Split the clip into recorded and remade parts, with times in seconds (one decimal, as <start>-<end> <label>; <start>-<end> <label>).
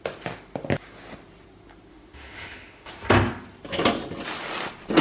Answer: 0.0-1.9 recorded; 1.9-2.9 remade; 2.9-5.0 recorded